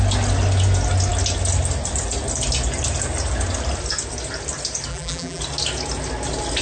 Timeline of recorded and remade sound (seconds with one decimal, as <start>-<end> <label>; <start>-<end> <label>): 0.0-4.9 recorded; 4.9-5.4 remade; 5.4-6.6 recorded